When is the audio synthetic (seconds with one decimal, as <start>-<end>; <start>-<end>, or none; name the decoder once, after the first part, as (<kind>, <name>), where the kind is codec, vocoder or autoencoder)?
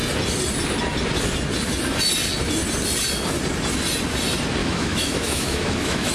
4.6-6.1 (autoencoder, DAC-VAE)